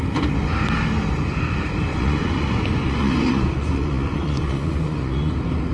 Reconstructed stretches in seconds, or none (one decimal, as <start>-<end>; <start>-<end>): 1.9-5.3